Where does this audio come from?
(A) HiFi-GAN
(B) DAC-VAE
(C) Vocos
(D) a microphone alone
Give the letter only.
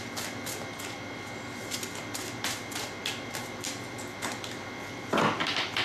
D